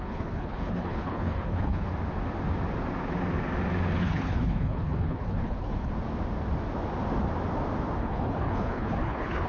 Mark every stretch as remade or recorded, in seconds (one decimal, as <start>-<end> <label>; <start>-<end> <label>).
0.0-1.9 remade; 1.9-4.0 recorded; 4.0-5.9 remade; 5.9-8.0 recorded; 8.0-9.5 remade